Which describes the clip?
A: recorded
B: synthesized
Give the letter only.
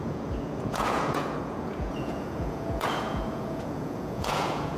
B